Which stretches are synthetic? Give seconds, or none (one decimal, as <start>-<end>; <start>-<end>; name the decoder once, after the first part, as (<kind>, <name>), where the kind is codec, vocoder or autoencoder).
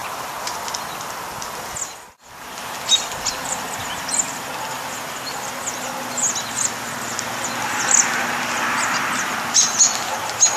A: none